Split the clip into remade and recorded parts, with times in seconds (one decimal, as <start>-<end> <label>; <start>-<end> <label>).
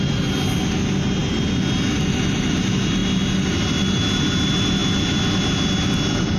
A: 0.0-6.4 recorded